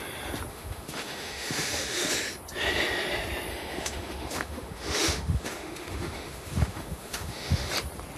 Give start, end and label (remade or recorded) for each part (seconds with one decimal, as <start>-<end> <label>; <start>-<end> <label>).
0.0-0.5 recorded; 0.5-2.1 remade; 2.1-3.5 recorded; 3.5-7.7 remade; 7.7-8.2 recorded